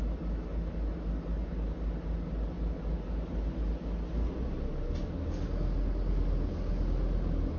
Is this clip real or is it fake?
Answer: real